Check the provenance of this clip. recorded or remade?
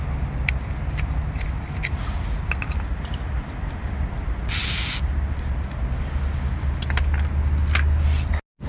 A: recorded